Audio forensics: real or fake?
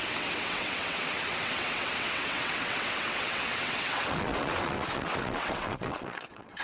fake